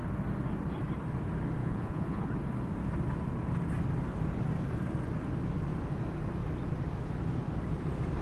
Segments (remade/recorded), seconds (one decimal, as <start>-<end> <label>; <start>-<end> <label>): 0.0-1.6 recorded; 1.6-2.3 remade; 2.3-8.2 recorded